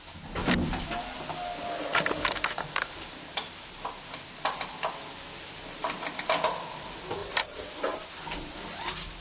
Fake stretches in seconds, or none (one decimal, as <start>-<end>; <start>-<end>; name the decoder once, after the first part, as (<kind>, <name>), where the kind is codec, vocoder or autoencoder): 7.2-8.5 (vocoder, BigVGAN v2)